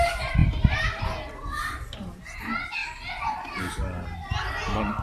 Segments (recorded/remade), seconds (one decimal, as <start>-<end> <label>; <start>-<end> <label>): 0.0-0.4 recorded; 0.4-1.0 remade; 1.0-5.0 recorded